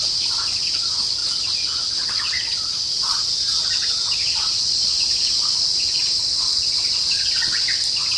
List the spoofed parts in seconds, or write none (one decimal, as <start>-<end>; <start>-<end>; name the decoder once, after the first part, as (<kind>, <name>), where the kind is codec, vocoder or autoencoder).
none